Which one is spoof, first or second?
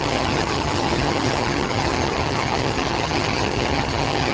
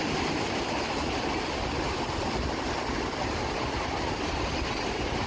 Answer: first